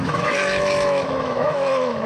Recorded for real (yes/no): no